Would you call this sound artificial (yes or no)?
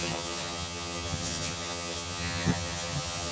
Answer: yes